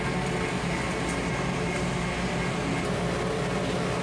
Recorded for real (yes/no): yes